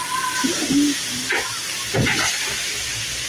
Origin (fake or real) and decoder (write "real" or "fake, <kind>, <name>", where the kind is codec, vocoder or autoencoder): real